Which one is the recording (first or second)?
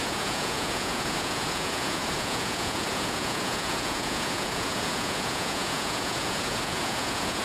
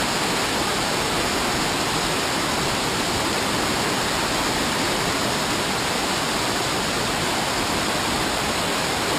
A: second